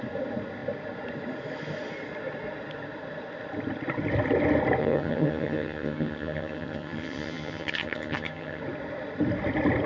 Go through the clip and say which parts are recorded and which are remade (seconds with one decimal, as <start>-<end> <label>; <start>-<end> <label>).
0.0-4.8 recorded; 4.8-8.6 remade; 8.6-9.9 recorded